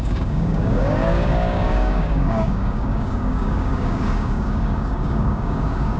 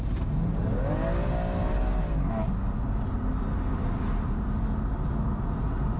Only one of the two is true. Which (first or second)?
second